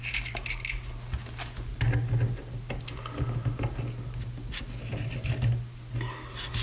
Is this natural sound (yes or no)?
yes